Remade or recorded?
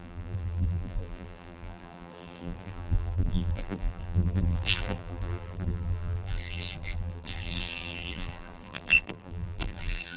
remade